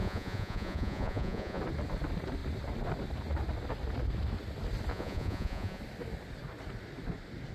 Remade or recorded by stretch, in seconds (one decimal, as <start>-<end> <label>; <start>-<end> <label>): 0.0-1.6 remade; 1.6-4.9 recorded; 4.9-5.8 remade; 5.8-7.5 recorded